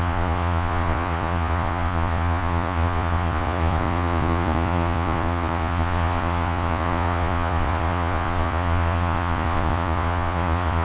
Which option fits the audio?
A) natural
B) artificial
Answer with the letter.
B